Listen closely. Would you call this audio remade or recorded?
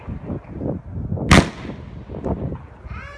recorded